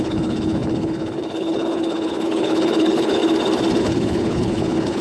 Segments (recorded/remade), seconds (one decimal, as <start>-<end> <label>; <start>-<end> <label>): 0.0-3.2 remade; 3.2-3.8 recorded; 3.8-5.0 remade